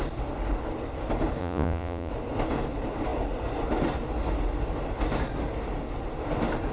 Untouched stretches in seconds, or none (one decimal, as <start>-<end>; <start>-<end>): 0.0-1.4; 2.1-6.7